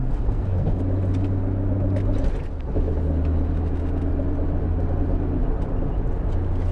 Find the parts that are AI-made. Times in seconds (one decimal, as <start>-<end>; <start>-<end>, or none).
0.0-0.8